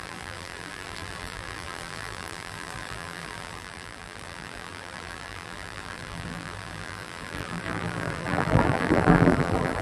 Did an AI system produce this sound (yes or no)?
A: yes